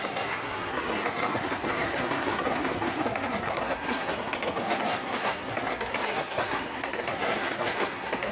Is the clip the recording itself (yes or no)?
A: no